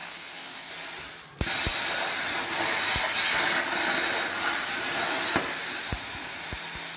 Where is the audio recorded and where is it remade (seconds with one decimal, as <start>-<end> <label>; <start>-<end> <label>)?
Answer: 0.0-0.7 remade; 0.7-7.0 recorded